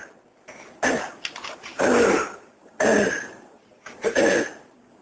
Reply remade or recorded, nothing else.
recorded